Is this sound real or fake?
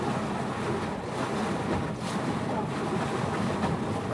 real